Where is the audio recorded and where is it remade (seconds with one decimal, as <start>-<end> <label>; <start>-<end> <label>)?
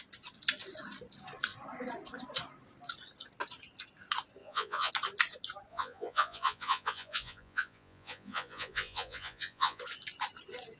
0.0-4.4 recorded; 4.4-4.9 remade; 4.9-5.7 recorded; 5.7-9.8 remade; 9.8-10.8 recorded